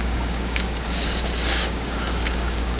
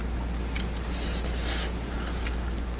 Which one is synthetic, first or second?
first